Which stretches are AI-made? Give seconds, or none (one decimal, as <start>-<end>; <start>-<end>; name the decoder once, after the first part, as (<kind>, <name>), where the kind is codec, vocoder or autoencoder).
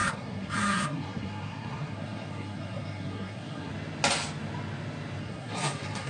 0.0-3.7 (codec, SNAC); 5.2-6.1